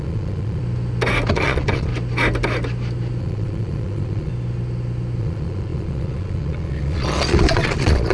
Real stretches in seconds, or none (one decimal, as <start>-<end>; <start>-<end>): 0.6-1.3; 1.9-3.2; 4.3-5.2